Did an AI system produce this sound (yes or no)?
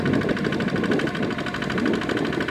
no